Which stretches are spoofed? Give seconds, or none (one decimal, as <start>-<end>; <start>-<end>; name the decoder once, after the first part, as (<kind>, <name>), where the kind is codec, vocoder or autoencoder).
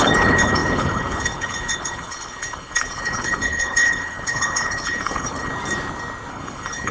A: 0.0-5.5 (codec, HILCodec); 6.3-6.9